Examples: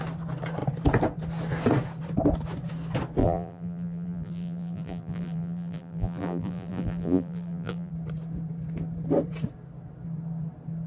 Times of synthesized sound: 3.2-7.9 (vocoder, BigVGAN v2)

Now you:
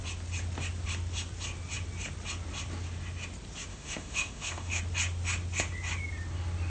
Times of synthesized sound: 3.7-4.8 (autoencoder, DAC-VAE)

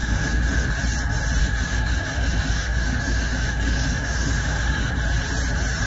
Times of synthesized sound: 0.0-0.7 (autoencoder, DAC-VAE); 1.4-4.9

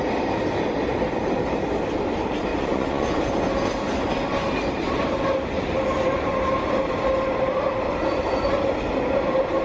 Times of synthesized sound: 2.5-3.2 (vocoder, Vocos)

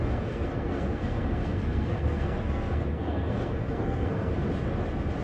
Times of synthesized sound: 0.0-4.3 (codec, SNAC)

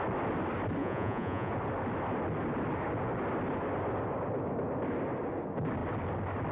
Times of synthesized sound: 0.8-1.5 (vocoder, Vocos)

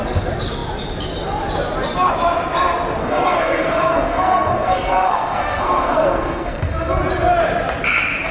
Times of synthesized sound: 3.0-6.9 (codec, SNAC)

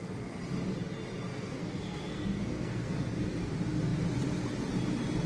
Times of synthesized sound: 1.3-3.5 (codec, SNAC)